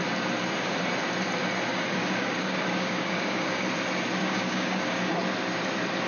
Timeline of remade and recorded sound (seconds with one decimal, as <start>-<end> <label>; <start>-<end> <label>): 0.0-1.7 recorded; 1.7-3.6 remade; 3.6-4.2 recorded; 4.2-5.1 remade; 5.1-6.1 recorded